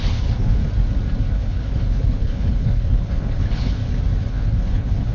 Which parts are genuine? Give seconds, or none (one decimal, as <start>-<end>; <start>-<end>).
0.6-1.3; 3.8-4.3